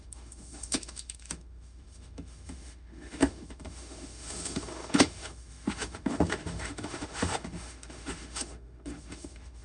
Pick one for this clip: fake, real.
fake